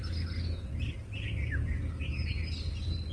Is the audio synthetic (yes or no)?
no